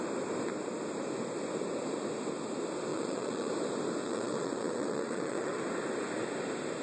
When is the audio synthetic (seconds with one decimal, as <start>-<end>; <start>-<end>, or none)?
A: 2.9-3.5; 4.0-5.6